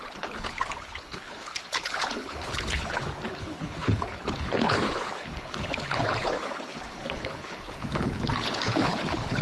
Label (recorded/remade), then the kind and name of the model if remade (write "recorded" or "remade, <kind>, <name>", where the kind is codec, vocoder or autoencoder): remade, codec, HILCodec